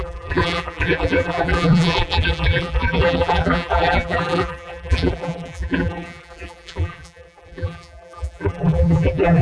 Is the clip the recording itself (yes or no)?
no